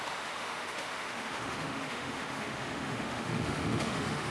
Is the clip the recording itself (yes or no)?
no